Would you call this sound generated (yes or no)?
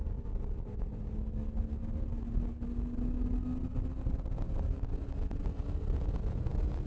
no